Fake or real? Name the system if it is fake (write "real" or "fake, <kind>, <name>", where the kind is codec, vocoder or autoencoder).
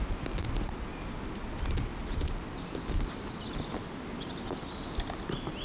real